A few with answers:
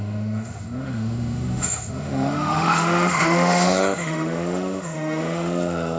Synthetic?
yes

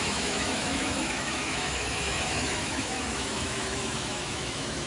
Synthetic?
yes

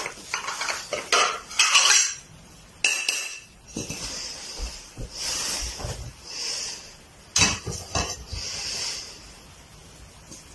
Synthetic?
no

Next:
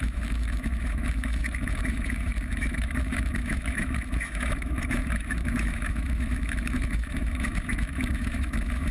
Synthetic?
yes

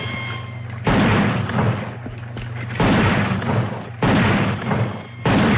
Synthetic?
no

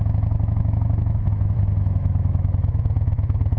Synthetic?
yes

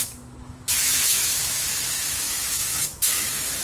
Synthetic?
yes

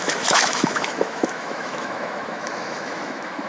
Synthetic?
yes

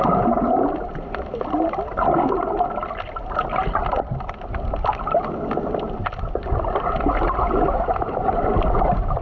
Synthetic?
no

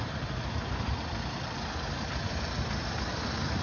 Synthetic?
no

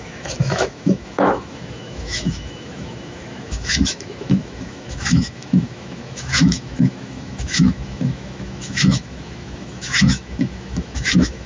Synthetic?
yes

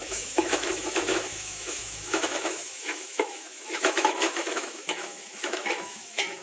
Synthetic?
yes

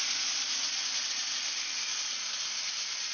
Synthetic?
no